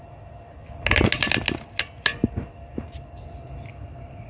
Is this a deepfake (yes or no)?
no